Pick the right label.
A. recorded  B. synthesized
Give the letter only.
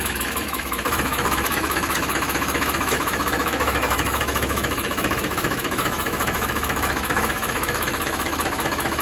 B